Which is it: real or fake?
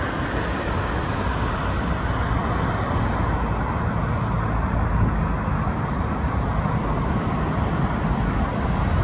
real